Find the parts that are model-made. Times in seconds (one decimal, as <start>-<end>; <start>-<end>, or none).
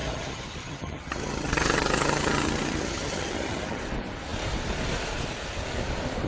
0.0-3.8